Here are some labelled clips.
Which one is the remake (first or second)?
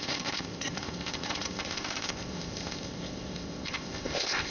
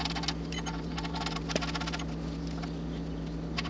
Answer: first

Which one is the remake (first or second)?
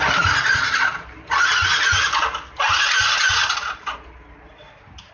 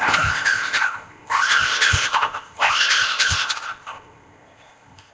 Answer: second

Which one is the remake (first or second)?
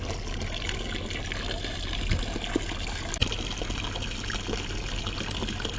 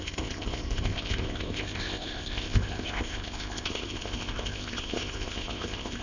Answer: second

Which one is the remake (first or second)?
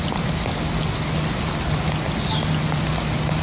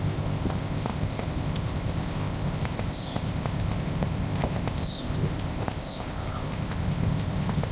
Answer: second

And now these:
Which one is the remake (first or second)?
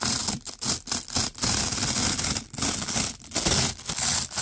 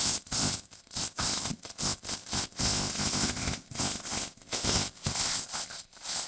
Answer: second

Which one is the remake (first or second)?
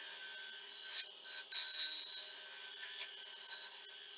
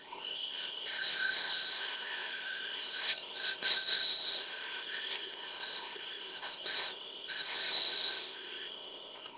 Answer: second